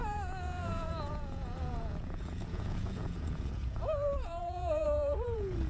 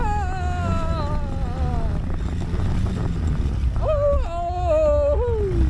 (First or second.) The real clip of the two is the second